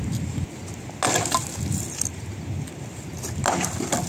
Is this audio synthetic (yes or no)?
no